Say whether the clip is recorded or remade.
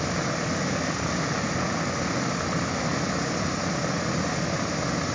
recorded